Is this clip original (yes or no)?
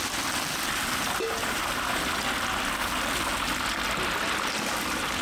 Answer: yes